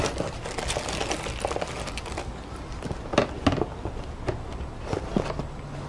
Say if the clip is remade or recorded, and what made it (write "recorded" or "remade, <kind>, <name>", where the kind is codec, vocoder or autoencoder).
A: recorded